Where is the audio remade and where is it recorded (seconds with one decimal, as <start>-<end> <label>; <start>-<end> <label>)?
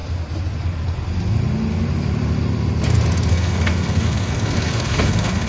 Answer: 0.0-3.3 recorded; 3.3-5.5 remade